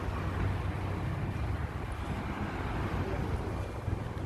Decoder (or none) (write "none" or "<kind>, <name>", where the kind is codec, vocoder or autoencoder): none